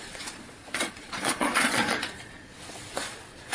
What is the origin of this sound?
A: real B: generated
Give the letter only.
B